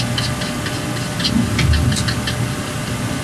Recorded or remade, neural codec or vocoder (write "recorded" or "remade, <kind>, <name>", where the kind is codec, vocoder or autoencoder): recorded